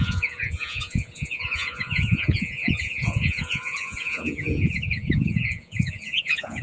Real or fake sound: fake